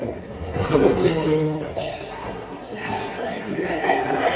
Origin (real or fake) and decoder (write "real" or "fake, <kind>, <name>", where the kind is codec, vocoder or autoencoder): fake, codec, SNAC